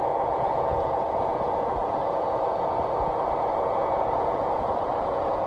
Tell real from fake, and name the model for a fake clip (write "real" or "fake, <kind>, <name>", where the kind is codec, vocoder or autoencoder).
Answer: fake, vocoder, Vocos